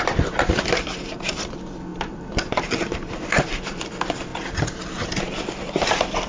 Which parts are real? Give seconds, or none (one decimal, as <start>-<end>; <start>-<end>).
4.3-5.4

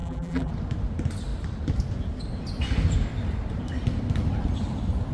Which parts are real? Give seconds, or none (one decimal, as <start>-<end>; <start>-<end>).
0.5-5.1

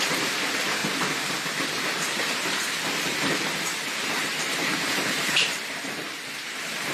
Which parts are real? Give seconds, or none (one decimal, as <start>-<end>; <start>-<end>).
0.8-2.0

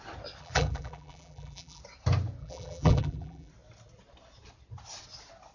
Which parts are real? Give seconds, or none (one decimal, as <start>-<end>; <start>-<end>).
0.0-0.4; 1.8-2.4; 3.5-5.5

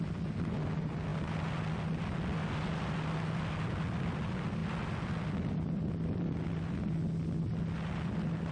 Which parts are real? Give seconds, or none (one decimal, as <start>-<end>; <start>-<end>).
0.0-8.5

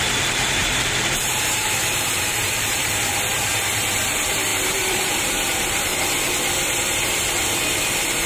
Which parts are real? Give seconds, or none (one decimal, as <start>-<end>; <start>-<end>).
3.5-4.0; 5.9-8.3

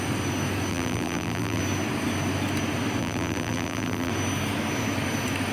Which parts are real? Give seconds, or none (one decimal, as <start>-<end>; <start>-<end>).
0.0-0.7; 1.6-3.0; 4.1-5.5